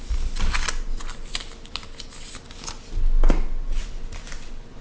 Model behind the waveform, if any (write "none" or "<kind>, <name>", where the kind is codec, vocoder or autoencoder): none